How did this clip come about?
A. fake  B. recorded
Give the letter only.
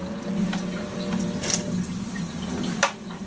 B